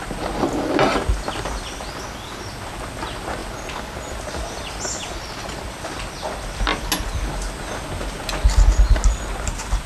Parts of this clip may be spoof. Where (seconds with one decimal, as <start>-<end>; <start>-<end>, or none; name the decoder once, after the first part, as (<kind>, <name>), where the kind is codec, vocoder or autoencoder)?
none